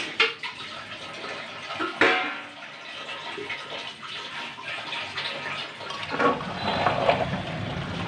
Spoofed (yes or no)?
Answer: no